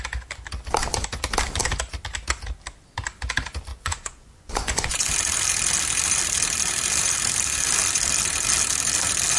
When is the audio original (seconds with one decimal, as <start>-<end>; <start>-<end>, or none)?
0.0-3.7; 5.1-9.4